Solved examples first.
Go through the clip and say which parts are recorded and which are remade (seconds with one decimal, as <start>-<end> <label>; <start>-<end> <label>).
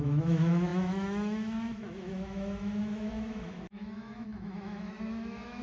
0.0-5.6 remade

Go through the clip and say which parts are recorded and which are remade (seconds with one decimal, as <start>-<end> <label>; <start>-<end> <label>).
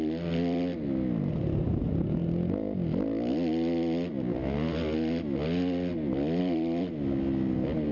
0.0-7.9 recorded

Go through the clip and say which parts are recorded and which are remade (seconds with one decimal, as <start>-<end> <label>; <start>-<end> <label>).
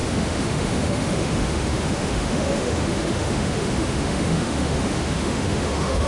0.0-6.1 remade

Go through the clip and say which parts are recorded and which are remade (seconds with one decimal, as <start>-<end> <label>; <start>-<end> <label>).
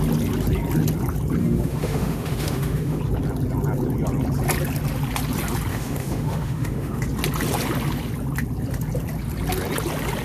0.0-1.4 recorded; 1.4-3.0 remade; 3.0-5.7 recorded; 5.7-7.0 remade; 7.0-10.2 recorded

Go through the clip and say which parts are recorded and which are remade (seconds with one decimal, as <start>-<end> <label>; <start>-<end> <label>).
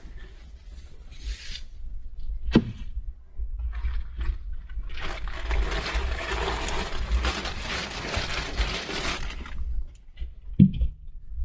0.0-11.4 recorded